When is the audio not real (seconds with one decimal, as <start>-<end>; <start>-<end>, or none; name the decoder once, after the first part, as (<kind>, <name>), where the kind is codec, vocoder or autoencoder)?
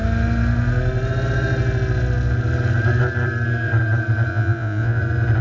4.3-5.0 (vocoder, Vocos)